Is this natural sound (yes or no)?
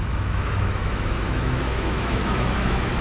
no